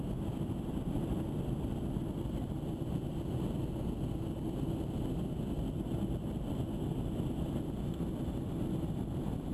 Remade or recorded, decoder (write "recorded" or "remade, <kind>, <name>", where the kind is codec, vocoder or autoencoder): recorded